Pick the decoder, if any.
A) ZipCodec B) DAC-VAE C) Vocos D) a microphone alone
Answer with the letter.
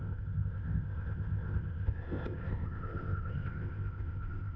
A